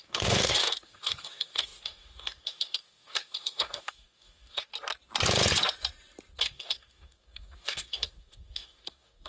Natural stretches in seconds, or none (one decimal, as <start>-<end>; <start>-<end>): 4.7-6.4